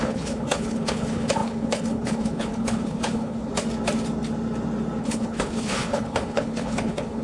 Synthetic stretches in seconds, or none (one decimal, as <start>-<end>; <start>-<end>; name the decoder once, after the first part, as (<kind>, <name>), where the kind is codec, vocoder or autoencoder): 0.0-3.5 (codec, HILCodec); 5.0-7.2